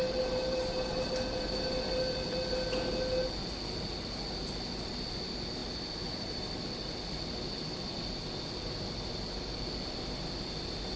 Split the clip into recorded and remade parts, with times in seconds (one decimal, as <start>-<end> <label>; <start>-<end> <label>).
0.0-11.0 recorded